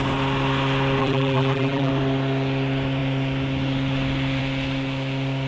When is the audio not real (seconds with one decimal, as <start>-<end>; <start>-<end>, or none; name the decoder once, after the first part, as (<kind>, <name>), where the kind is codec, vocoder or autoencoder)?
1.0-1.9 (vocoder, BigVGAN v2)